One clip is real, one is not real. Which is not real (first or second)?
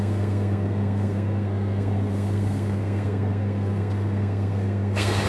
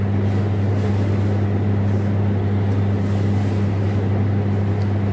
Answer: first